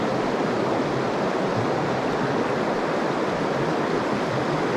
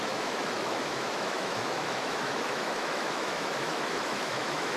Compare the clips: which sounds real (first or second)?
first